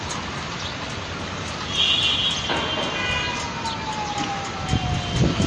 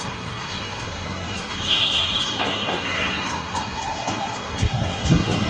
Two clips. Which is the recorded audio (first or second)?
first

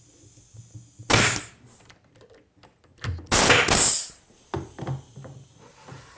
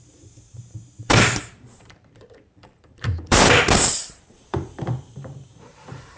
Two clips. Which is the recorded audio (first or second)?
first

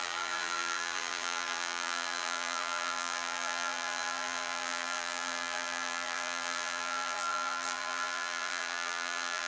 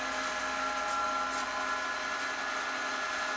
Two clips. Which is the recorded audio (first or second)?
second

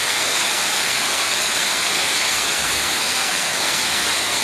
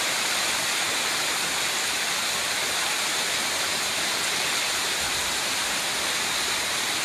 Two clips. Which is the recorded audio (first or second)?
second